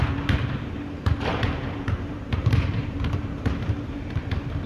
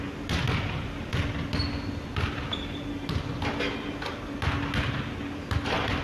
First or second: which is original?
second